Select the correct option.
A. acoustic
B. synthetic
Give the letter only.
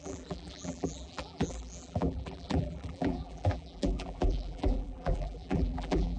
B